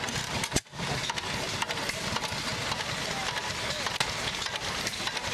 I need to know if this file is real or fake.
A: real